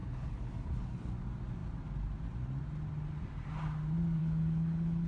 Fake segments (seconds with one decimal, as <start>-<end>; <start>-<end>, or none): 0.0-1.1; 4.2-5.1